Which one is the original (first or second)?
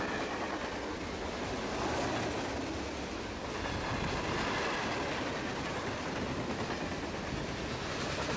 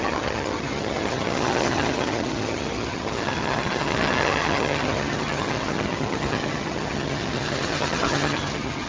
first